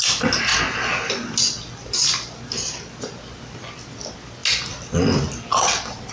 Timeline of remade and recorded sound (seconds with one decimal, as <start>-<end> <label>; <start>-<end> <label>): 0.0-6.1 recorded